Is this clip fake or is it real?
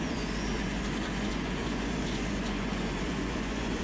fake